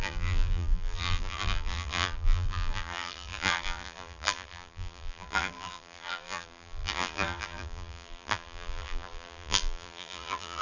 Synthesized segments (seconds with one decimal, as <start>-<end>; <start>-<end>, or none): 0.0-10.6